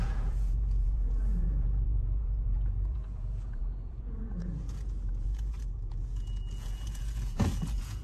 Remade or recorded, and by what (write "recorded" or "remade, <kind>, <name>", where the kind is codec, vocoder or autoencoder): remade, vocoder, Vocos